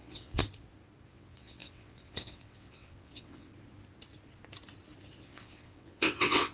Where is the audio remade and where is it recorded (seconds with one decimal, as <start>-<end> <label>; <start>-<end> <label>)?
0.0-0.4 remade; 0.4-1.1 recorded; 1.1-3.5 remade; 3.5-5.2 recorded; 5.2-6.5 remade